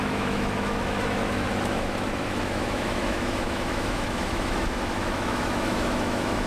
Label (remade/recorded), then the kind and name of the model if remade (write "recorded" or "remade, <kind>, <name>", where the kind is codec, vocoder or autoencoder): remade, autoencoder, DAC-VAE